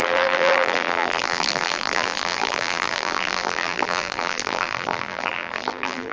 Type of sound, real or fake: fake